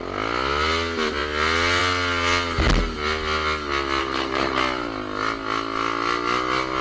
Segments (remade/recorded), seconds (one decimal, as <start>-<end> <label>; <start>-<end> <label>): 0.0-4.0 recorded; 4.0-4.6 remade; 4.6-6.8 recorded